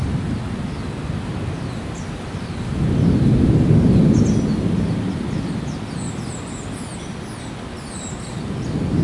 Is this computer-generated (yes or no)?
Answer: no